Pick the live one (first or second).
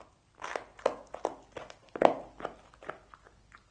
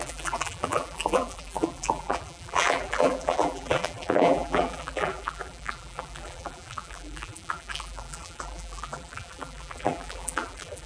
first